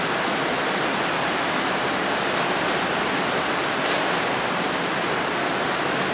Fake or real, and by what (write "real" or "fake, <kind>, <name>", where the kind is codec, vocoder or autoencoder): real